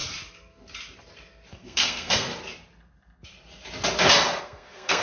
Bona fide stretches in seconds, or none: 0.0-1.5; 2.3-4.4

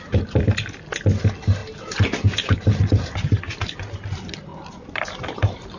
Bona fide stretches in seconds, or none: 0.0-4.5

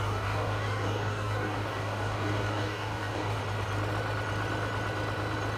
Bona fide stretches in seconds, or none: 3.4-5.6

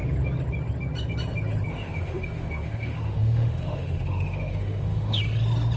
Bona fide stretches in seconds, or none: 0.0-1.7; 5.2-5.8